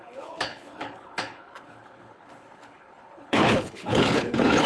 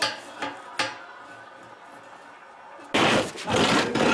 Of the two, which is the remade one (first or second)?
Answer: first